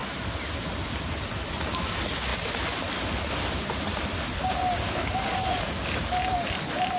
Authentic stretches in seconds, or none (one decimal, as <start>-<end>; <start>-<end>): 0.0-7.0